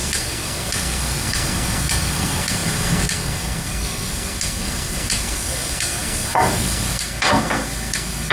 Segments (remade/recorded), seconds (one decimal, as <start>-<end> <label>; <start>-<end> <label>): 0.0-8.3 remade